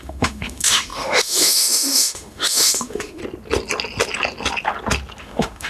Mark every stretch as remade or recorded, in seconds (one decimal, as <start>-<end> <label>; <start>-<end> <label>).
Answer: 0.0-3.2 remade; 3.2-5.2 recorded; 5.2-5.7 remade

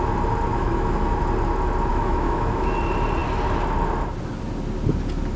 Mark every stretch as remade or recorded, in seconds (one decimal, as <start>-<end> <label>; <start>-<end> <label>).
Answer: 0.0-0.5 recorded; 0.5-1.2 remade; 1.2-1.9 recorded; 1.9-2.8 remade; 2.8-5.4 recorded